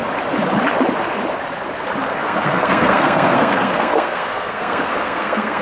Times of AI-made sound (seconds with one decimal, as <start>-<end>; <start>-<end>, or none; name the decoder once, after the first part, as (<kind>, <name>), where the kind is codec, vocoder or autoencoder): 2.1-5.6 (codec, SNAC)